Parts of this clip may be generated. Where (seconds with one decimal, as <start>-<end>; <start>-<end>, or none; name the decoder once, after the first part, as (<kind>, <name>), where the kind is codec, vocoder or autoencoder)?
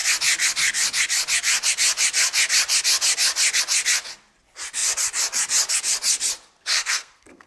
6.7-7.5 (codec, SNAC)